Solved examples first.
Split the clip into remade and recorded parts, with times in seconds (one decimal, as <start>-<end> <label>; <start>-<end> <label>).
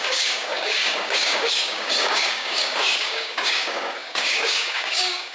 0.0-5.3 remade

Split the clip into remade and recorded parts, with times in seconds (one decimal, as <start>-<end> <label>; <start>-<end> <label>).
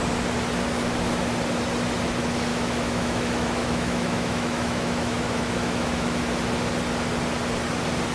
0.0-2.5 recorded; 2.5-6.2 remade; 6.2-8.1 recorded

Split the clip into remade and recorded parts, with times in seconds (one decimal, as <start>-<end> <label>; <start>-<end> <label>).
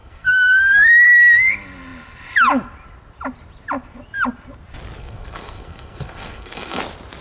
0.0-1.2 remade; 1.2-5.0 recorded; 5.0-6.8 remade; 6.8-7.2 recorded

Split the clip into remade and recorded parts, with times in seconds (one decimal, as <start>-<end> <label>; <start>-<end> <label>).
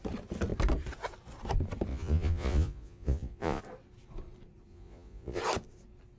0.0-1.9 recorded; 1.9-3.6 remade; 3.6-4.7 recorded; 4.7-5.4 remade; 5.4-6.2 recorded